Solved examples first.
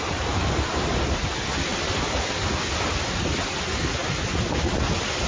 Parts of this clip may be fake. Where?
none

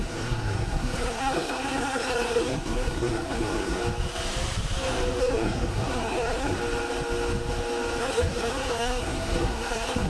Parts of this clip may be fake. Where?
0.0-3.8; 5.2-6.6; 8.0-10.1

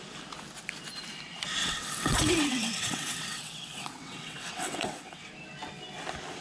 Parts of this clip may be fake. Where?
1.6-5.3

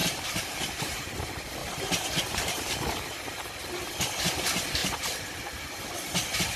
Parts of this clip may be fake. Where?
0.0-1.2; 1.6-2.7; 4.8-6.6